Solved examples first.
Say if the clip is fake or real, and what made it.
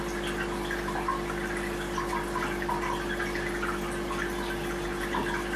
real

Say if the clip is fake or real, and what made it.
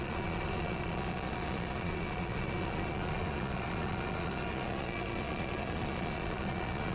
fake, vocoder, Vocos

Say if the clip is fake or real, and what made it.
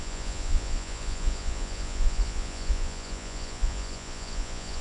fake, vocoder, Vocos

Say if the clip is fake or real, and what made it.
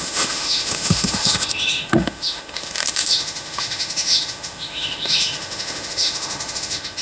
fake, autoencoder, DAC-VAE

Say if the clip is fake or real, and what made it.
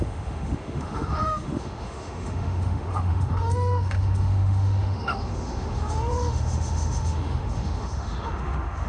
fake, autoencoder, DAC-VAE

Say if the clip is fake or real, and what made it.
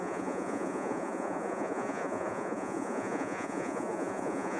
fake, vocoder, Vocos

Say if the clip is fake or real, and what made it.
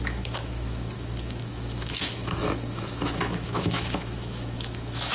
fake, autoencoder, DAC-VAE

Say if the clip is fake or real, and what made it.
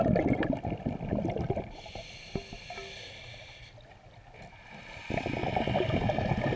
real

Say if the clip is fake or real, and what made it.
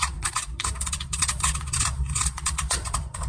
fake, vocoder, Vocos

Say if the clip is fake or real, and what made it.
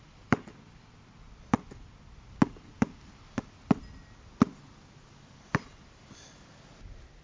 real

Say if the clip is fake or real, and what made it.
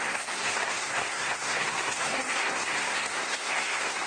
fake, codec, SNAC